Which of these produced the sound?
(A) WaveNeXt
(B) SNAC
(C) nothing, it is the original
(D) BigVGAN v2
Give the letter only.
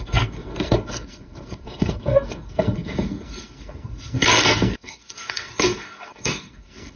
B